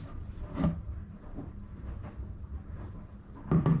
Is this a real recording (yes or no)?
yes